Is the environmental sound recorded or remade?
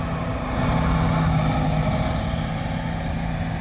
recorded